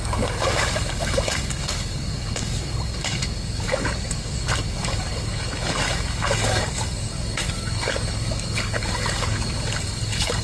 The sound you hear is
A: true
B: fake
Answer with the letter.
B